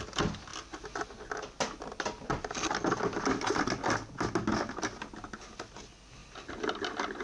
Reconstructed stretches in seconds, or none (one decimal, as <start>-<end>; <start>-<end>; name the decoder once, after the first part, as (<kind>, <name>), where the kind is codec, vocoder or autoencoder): none